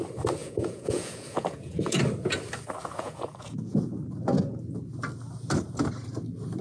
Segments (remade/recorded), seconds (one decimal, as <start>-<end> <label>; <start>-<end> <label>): 0.0-0.4 recorded; 0.4-2.0 remade; 2.0-2.8 recorded; 2.8-3.9 remade; 3.9-6.6 recorded